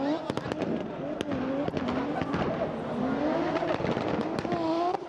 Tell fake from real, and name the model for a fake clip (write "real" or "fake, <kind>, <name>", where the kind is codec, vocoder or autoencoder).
real